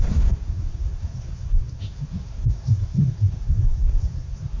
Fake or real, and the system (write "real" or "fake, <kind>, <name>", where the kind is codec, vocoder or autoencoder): fake, codec, SNAC